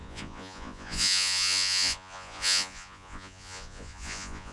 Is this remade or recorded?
remade